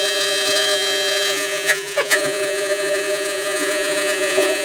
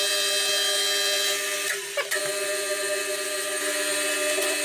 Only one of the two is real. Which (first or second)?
second